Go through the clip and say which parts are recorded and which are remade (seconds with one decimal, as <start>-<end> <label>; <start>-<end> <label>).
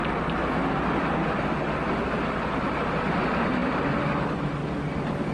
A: 0.0-5.3 recorded